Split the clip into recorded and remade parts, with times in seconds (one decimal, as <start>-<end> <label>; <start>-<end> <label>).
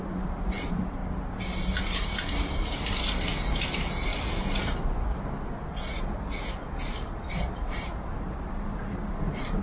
0.0-1.0 remade; 1.0-2.1 recorded; 2.1-4.1 remade; 4.1-7.3 recorded; 7.3-9.6 remade